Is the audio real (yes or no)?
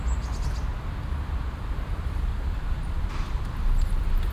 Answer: yes